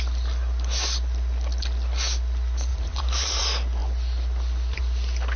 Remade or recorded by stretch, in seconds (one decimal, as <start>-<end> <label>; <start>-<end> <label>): 0.0-2.7 recorded; 2.7-3.4 remade; 3.4-5.4 recorded